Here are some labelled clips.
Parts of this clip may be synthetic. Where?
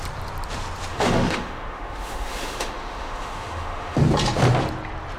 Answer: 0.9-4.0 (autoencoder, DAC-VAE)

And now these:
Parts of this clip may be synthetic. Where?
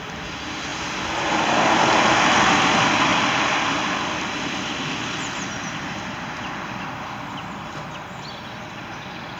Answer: none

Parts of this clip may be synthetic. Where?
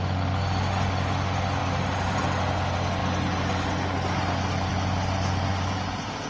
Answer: 1.6-2.2 (vocoder, BigVGAN v2); 5.5-6.3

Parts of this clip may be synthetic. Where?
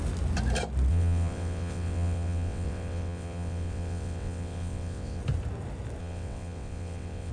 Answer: 0.9-5.2 (vocoder, WaveNeXt); 6.0-7.3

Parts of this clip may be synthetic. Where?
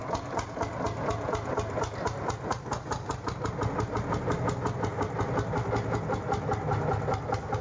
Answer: none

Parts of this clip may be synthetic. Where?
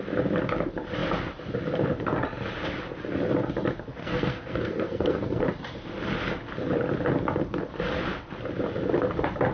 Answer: 4.0-5.4 (codec, SNAC)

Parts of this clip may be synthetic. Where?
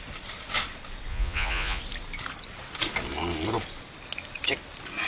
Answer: 1.1-1.8 (vocoder, Vocos)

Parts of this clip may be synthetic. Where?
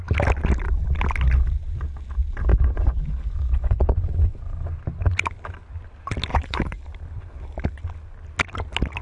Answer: 2.5-4.8 (vocoder, Vocos); 6.3-6.8